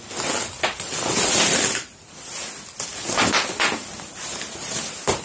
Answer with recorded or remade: recorded